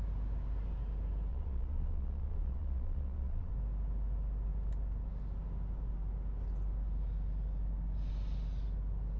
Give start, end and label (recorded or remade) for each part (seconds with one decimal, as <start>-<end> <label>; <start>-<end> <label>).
0.0-1.3 recorded; 1.3-3.5 remade; 3.5-9.2 recorded

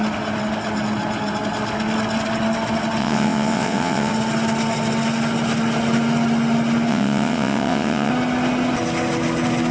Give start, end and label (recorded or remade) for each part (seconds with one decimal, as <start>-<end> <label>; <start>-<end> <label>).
0.0-3.0 recorded; 3.0-4.1 remade; 4.1-6.9 recorded; 6.9-8.1 remade; 8.1-9.7 recorded